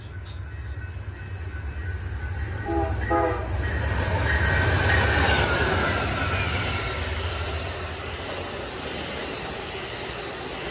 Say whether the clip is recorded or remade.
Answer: recorded